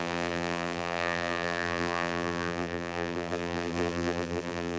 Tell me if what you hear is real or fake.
fake